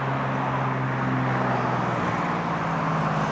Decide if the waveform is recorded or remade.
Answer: recorded